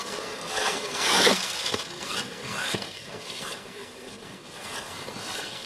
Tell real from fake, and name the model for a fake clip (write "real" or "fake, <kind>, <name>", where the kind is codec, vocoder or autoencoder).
fake, codec, SNAC